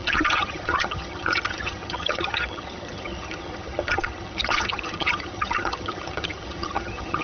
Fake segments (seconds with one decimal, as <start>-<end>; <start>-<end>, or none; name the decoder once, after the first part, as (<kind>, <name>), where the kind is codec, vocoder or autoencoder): 0.0-7.2 (vocoder, HiFi-GAN)